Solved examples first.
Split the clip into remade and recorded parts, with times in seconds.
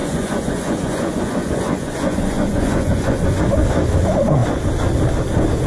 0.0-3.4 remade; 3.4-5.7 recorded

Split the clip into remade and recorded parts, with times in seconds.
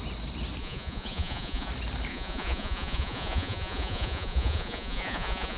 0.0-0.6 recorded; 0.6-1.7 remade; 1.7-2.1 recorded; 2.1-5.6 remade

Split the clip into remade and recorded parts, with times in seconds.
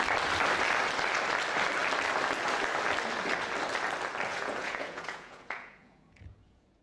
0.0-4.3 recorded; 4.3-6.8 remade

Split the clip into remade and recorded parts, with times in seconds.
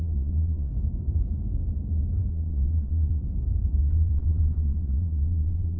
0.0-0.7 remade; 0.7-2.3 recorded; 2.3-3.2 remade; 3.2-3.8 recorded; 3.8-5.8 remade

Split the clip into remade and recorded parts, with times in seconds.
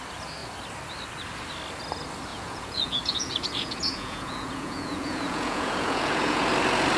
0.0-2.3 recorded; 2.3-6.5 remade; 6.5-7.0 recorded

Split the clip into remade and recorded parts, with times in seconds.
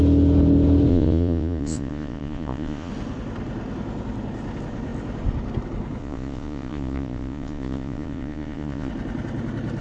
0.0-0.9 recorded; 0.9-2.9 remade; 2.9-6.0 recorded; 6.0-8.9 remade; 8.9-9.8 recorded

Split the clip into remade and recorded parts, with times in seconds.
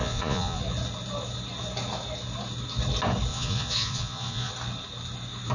0.0-0.6 remade; 0.6-3.3 recorded; 3.3-4.5 remade; 4.5-5.5 recorded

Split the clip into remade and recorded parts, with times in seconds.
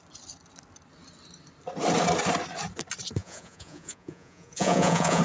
0.0-3.2 recorded; 3.2-5.2 remade